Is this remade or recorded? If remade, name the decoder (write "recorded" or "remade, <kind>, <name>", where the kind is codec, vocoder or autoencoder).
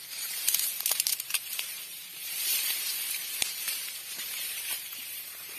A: remade, vocoder, BigVGAN v2